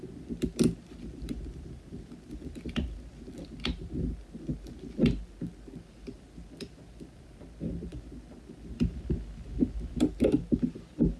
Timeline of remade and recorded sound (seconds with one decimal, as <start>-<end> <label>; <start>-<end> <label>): 0.0-11.2 recorded